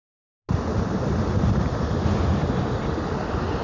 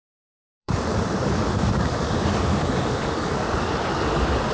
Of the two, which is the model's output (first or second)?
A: second